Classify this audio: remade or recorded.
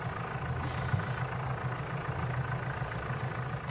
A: recorded